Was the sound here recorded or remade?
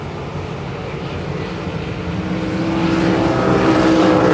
recorded